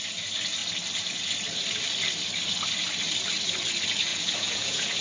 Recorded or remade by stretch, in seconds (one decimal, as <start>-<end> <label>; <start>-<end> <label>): 0.0-4.1 recorded; 4.1-5.0 remade